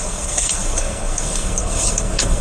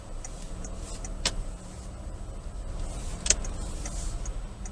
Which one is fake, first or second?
first